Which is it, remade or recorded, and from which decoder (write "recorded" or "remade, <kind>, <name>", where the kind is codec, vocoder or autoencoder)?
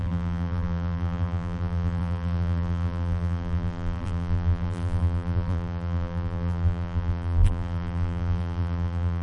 remade, vocoder, BigVGAN v2